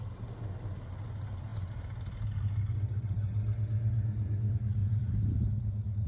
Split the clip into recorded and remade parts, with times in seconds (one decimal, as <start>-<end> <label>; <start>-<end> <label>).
0.0-4.8 recorded; 4.8-5.5 remade; 5.5-6.1 recorded